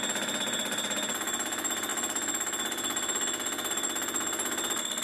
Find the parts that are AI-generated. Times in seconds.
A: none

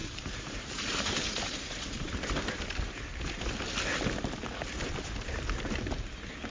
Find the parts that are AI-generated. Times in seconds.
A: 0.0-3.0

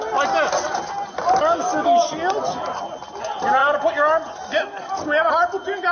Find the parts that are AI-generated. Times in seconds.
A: none

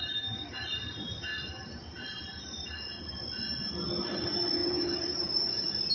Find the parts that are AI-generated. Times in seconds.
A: 4.6-5.9

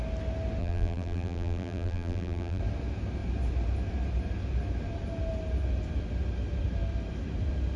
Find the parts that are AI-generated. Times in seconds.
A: 0.6-2.6

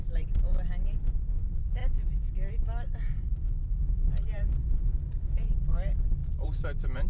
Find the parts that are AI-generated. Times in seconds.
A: 3.8-4.6; 6.2-7.1